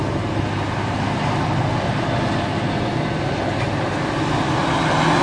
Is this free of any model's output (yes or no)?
yes